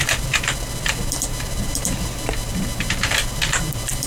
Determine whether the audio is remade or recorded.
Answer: remade